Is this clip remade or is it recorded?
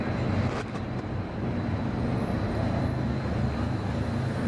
recorded